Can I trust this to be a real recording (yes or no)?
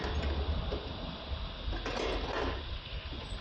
yes